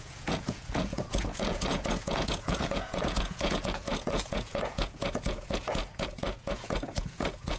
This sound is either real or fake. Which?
fake